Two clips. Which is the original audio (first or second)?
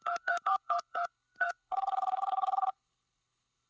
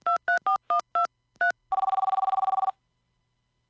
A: second